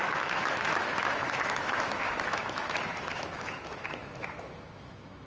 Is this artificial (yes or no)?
yes